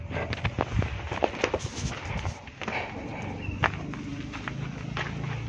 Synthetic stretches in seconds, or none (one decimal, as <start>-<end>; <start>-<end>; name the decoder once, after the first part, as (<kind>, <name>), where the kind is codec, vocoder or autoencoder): none